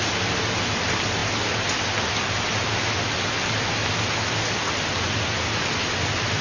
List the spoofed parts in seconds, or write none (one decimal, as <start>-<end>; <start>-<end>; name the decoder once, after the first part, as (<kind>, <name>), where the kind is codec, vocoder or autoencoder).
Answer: none